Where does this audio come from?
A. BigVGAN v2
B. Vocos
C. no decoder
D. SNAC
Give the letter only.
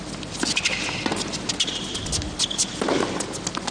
C